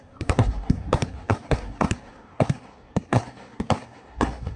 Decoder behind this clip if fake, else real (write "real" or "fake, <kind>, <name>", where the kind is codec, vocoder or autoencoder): fake, codec, SNAC